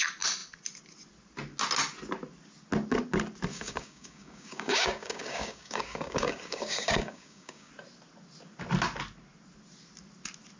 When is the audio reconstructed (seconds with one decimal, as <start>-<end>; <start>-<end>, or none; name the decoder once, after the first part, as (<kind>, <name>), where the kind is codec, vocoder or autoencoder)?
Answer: 3.5-7.7 (codec, DAC)